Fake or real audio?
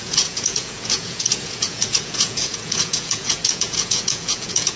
fake